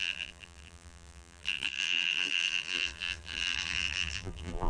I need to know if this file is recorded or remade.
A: remade